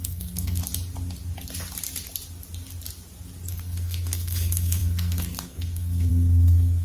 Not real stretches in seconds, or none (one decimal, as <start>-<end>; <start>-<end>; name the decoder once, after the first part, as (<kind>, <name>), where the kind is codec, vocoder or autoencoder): 0.0-0.6 (codec, SNAC); 3.5-6.8